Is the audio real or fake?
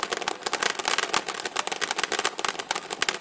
real